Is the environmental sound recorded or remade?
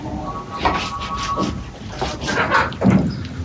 recorded